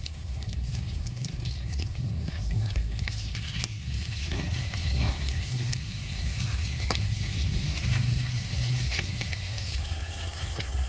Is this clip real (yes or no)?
no